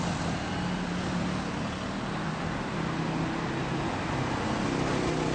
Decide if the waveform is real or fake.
real